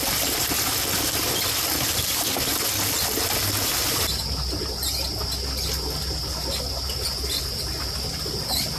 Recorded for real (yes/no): yes